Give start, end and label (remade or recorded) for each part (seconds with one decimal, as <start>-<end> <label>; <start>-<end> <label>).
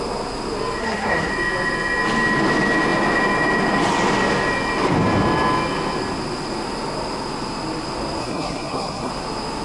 0.0-0.8 recorded; 0.8-1.3 remade; 1.3-8.2 recorded; 8.2-9.1 remade; 9.1-9.6 recorded